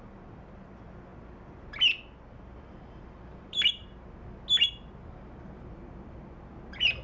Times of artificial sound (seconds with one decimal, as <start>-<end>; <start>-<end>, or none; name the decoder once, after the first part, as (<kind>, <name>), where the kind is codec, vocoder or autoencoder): 0.0-3.8 (vocoder, BigVGAN v2); 5.7-7.0